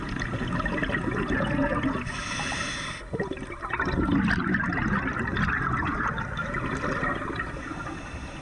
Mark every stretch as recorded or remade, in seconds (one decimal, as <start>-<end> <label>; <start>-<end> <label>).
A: 0.0-8.4 recorded